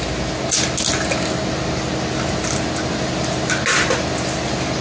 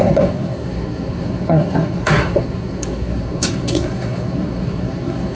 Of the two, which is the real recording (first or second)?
first